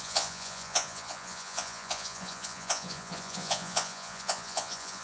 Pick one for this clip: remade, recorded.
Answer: remade